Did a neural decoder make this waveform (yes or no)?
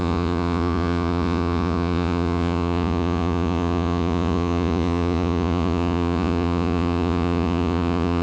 yes